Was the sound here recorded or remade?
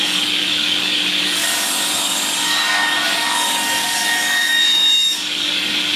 remade